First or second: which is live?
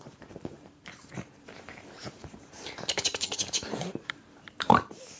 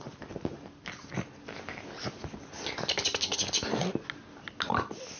second